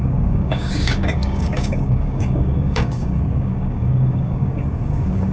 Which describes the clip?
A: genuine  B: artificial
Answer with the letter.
B